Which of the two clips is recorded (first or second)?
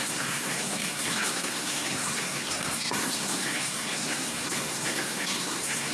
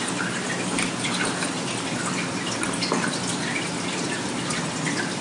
second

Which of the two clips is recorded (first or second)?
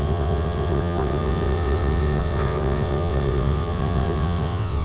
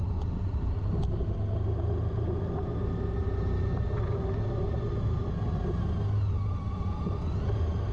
second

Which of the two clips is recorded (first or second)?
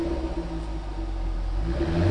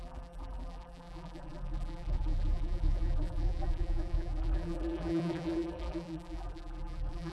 first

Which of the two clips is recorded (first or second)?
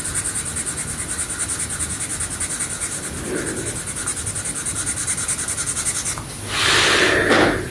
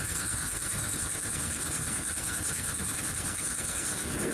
first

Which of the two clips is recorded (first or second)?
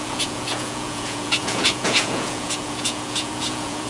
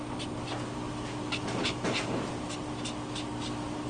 second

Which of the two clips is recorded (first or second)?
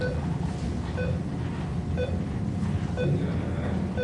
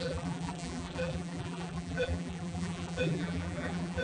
first